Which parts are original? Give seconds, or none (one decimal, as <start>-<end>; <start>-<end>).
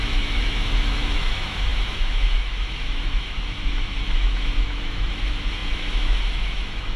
none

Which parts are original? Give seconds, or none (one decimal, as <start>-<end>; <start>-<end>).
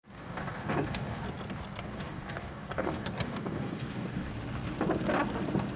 1.2-1.9; 4.3-5.8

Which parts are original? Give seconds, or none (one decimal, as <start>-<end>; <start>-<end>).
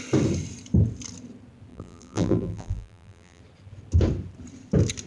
0.0-1.7; 3.4-5.1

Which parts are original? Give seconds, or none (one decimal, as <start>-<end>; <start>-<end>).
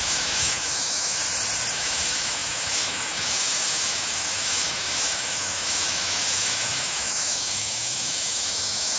1.2-1.7